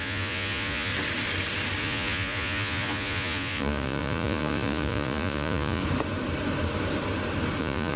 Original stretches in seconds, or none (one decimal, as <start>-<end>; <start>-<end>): 0.9-1.8; 5.8-7.6